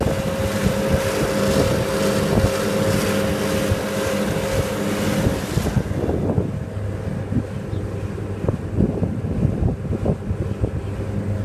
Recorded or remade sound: recorded